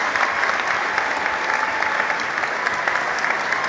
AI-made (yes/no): no